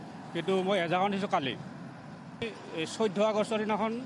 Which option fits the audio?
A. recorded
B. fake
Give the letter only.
A